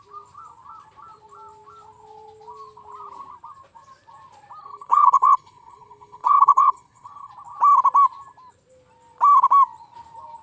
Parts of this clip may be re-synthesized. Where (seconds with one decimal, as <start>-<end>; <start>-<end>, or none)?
4.6-7.3